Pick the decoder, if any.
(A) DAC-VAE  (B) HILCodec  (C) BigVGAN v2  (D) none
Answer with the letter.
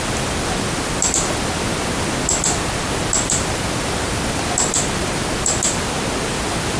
D